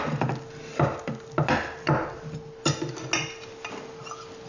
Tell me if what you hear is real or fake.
real